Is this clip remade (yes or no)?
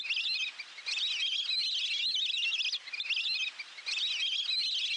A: no